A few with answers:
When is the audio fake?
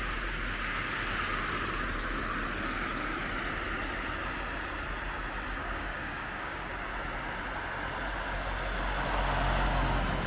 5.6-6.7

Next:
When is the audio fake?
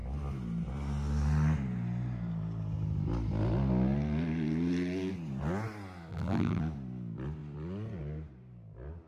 6.1-6.6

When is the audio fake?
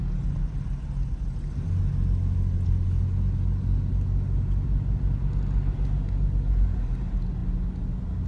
none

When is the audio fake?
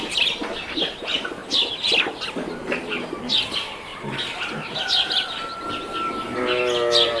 none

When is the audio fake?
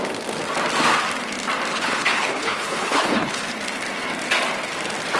1.7-3.5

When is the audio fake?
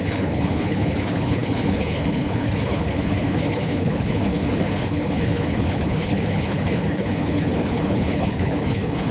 0.0-9.1